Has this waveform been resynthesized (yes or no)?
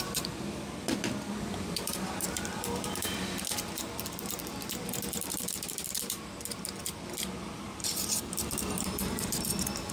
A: yes